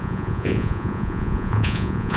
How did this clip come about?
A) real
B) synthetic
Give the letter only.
B